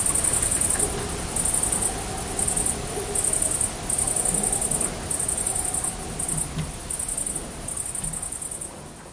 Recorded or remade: recorded